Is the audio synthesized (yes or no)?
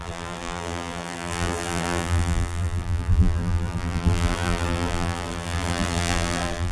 yes